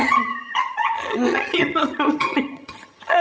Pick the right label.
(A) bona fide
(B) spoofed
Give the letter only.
B